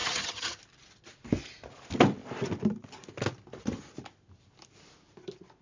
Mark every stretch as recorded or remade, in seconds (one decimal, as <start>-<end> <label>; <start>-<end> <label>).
0.0-0.6 remade; 0.6-5.6 recorded